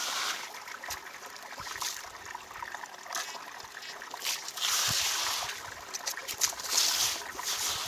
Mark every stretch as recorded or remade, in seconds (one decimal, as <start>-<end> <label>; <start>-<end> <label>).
0.0-7.9 recorded